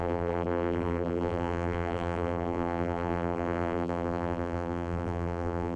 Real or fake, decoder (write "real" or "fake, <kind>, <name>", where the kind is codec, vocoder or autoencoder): fake, vocoder, BigVGAN v2